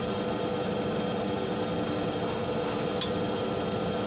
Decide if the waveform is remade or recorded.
recorded